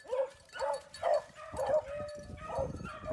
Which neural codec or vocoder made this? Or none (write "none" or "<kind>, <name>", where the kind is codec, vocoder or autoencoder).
none